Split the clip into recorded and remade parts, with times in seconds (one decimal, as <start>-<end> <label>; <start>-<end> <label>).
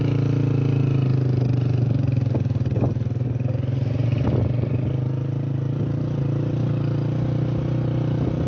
0.0-8.5 recorded